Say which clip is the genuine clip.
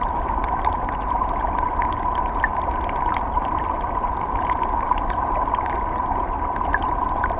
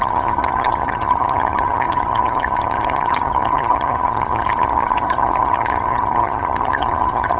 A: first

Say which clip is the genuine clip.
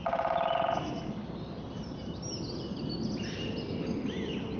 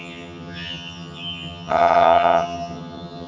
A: first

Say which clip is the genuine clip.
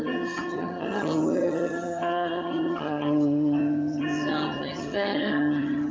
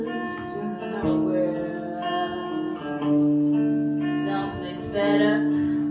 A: second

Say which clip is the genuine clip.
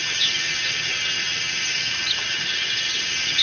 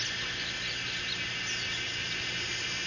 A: second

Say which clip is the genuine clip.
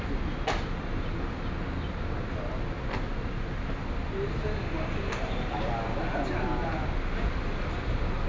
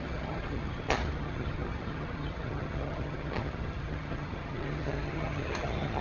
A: first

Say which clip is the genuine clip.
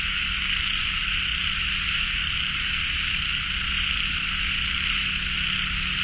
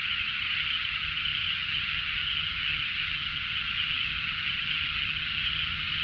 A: first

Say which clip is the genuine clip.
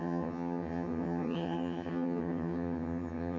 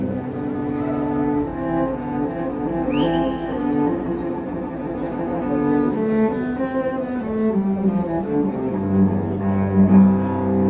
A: second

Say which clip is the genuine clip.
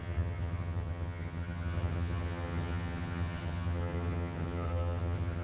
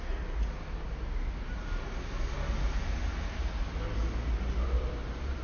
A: second